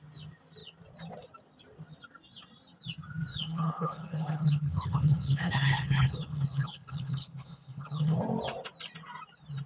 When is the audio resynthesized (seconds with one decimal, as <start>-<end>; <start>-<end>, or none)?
3.3-8.2